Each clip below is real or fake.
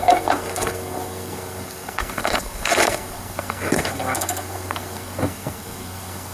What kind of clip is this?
fake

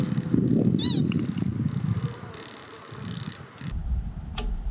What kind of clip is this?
real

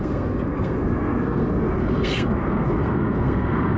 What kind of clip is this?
fake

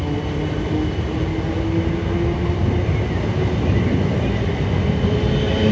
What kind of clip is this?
real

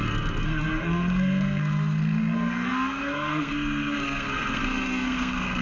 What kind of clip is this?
fake